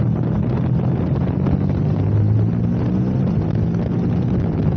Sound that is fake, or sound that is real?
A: real